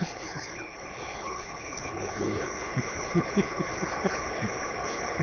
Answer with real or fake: fake